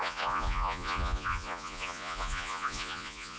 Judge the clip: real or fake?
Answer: fake